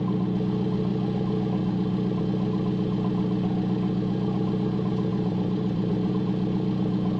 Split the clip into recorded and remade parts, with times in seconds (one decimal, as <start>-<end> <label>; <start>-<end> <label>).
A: 0.0-5.1 recorded; 5.1-6.1 remade; 6.1-7.2 recorded